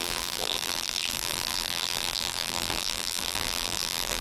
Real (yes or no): no